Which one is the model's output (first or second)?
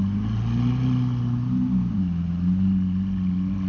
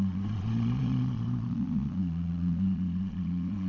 second